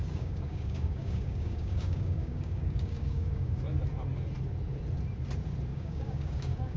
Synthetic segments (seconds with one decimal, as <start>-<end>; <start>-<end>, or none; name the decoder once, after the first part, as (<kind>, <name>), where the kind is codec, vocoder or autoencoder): 0.0-3.6 (codec, DAC); 5.7-6.8